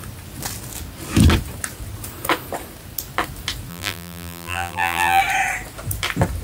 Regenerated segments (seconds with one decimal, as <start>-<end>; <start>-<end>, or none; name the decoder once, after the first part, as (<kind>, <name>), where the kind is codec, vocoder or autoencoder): 3.7-5.2 (vocoder, BigVGAN v2)